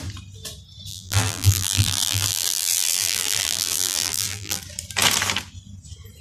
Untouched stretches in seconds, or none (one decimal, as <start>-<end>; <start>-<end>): 0.0-0.9; 4.6-6.2